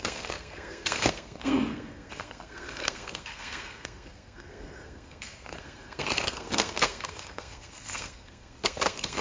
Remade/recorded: remade